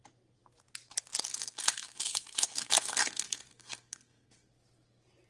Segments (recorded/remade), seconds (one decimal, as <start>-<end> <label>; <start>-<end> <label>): 0.0-1.3 recorded; 1.3-4.5 remade; 4.5-5.3 recorded

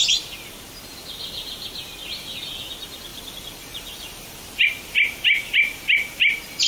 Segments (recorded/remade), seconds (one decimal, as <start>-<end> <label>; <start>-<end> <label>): 0.0-3.1 recorded; 3.1-6.7 remade

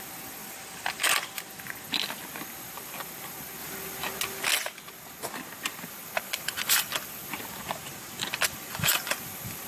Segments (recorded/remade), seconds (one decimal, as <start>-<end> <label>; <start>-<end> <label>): 0.0-0.4 recorded; 0.4-1.4 remade; 1.4-5.7 recorded; 5.7-9.7 remade

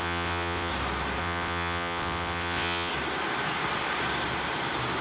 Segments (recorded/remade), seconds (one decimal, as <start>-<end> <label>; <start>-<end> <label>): 0.0-0.7 remade; 0.7-1.2 recorded; 1.2-2.9 remade; 2.9-5.0 recorded

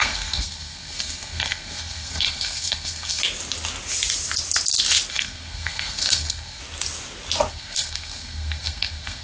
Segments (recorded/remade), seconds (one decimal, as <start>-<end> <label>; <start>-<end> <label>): 0.0-3.2 remade; 3.2-5.1 recorded; 5.1-6.6 remade; 6.6-7.5 recorded; 7.5-9.2 remade

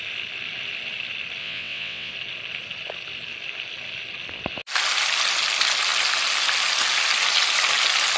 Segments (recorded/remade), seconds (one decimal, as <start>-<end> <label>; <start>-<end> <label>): 0.0-1.4 recorded; 1.4-2.1 remade; 2.1-8.2 recorded

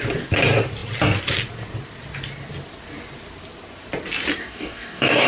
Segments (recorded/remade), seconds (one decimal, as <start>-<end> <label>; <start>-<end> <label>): 0.0-4.4 recorded; 4.4-5.3 remade

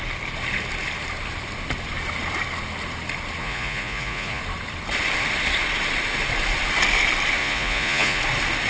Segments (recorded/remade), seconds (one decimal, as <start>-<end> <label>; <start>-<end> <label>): 0.0-3.4 recorded; 3.4-4.4 remade; 4.4-7.4 recorded; 7.4-8.2 remade; 8.2-8.7 recorded